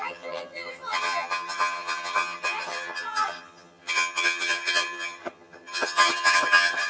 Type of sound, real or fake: fake